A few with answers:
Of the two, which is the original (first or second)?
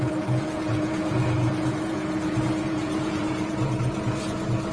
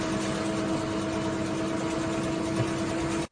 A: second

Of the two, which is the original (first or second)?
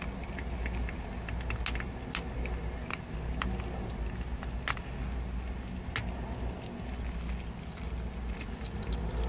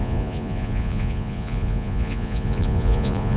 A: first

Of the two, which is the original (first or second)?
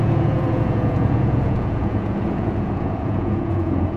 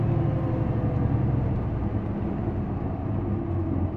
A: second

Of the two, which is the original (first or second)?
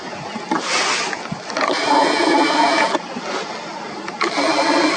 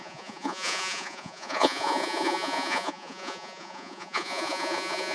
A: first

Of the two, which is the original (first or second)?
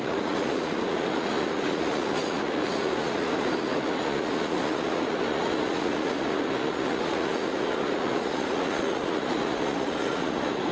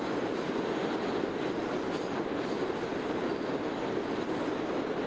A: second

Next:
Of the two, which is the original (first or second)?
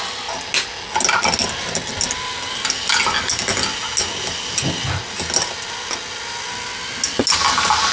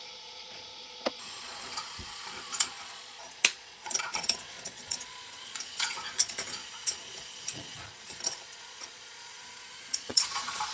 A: first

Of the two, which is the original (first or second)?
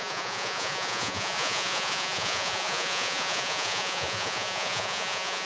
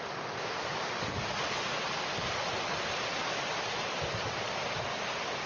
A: second